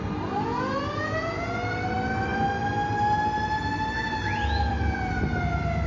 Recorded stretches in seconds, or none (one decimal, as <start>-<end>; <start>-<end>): 0.0-5.9